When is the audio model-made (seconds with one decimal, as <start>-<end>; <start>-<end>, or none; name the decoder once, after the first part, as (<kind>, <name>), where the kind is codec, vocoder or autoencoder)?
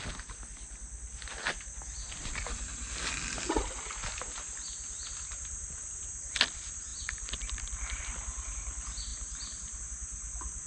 6.9-8.0 (vocoder, BigVGAN v2)